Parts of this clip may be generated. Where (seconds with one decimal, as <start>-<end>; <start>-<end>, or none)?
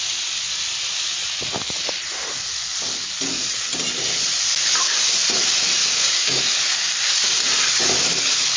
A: 5.8-6.4